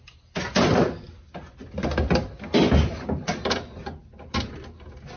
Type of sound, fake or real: real